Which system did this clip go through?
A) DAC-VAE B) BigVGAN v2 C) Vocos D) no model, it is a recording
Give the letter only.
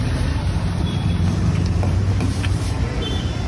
B